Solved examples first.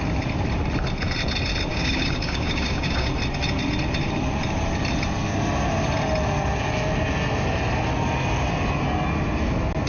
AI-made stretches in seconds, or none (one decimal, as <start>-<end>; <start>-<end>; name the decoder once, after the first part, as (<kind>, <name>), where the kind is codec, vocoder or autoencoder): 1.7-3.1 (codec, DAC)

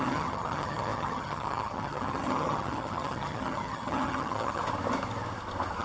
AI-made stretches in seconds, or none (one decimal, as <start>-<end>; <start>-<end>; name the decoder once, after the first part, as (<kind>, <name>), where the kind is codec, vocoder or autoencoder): 0.0-4.6 (vocoder, HiFi-GAN)

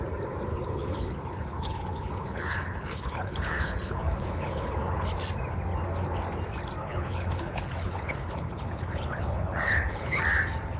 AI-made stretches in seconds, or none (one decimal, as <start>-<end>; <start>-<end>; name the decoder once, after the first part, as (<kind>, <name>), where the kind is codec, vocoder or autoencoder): 0.5-5.1 (codec, HILCodec); 6.8-10.2

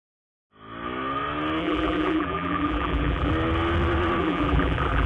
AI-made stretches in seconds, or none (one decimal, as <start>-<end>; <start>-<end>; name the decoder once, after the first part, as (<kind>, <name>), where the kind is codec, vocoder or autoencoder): 1.6-3.3 (vocoder, BigVGAN v2); 4.2-5.1

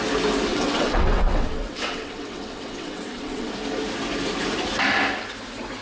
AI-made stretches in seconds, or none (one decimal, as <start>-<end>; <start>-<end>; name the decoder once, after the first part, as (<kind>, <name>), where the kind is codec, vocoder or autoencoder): 0.5-3.5 (vocoder, WaveNeXt)

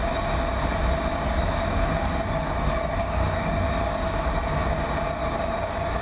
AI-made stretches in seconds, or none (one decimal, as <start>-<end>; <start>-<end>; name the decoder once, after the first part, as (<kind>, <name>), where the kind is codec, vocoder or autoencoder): 1.1-4.7 (codec, DAC); 5.2-6.0